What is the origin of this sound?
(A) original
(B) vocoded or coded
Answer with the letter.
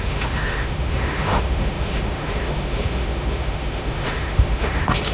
B